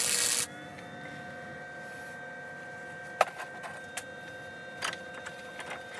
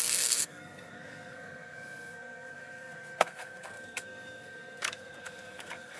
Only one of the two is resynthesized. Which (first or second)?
second